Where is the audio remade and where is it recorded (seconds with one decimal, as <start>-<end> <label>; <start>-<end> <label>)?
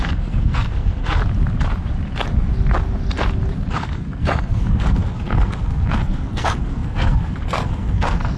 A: 0.0-1.2 remade; 1.2-3.7 recorded; 3.7-8.4 remade